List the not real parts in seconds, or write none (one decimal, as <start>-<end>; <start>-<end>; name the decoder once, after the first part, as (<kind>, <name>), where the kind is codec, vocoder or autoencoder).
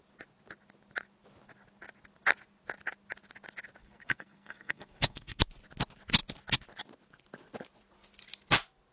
3.8-5.4 (codec, SNAC)